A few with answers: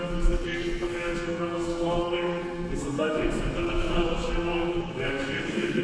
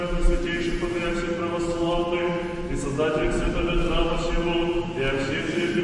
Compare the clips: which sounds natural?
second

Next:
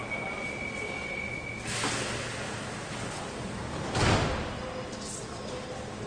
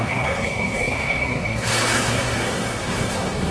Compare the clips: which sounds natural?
first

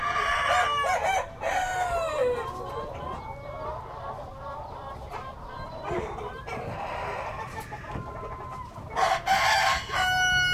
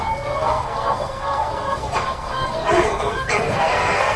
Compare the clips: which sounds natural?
first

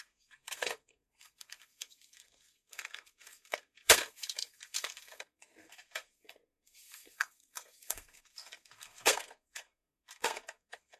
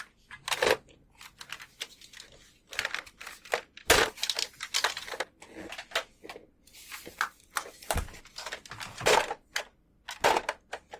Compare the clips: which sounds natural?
second